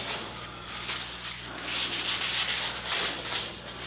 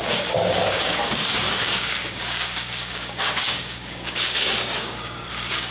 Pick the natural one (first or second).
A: first